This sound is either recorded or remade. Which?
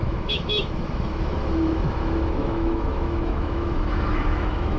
remade